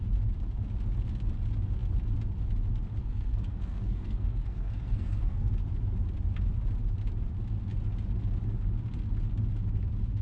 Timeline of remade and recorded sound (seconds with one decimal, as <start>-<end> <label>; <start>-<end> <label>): 0.0-3.0 recorded; 3.0-5.5 remade; 5.5-10.2 recorded